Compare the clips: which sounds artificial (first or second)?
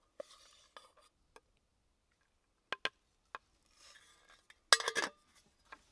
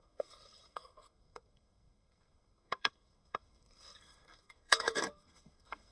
second